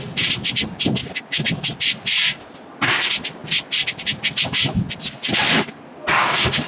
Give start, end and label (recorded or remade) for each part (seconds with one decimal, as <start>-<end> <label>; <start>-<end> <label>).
0.0-6.7 recorded